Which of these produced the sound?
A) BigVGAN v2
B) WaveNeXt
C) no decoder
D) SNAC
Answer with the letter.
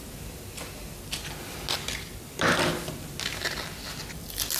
C